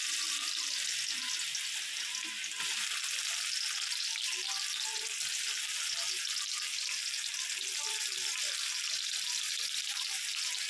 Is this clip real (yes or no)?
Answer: yes